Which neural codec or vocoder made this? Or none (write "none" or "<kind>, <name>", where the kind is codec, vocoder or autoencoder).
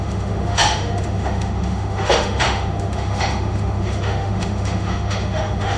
autoencoder, DAC-VAE